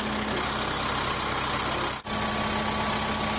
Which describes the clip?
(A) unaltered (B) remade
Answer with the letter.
A